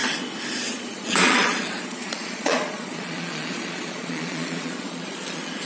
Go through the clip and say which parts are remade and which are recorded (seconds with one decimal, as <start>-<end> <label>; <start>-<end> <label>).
0.0-0.7 recorded; 0.7-5.7 remade